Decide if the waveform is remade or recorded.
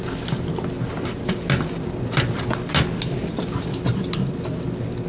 recorded